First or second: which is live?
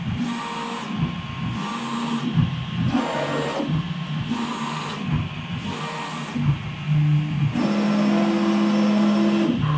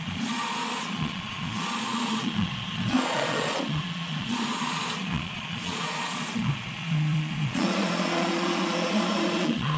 first